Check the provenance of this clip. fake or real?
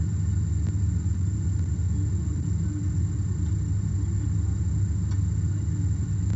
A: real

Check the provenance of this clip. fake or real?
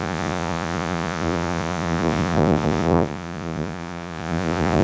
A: fake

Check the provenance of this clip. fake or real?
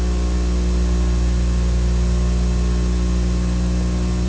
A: real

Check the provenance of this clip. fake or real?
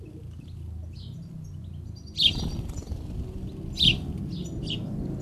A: real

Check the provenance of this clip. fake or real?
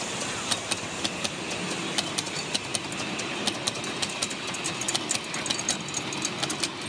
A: real